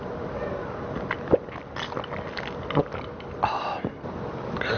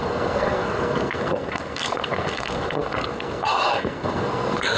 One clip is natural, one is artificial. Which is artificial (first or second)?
second